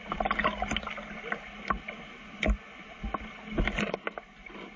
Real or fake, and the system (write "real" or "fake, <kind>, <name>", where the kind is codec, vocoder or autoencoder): real